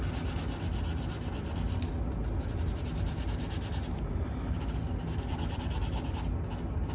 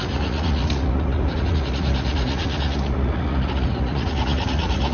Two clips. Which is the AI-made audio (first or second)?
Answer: second